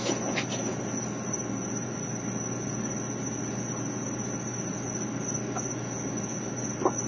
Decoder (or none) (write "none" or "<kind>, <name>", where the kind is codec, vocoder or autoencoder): none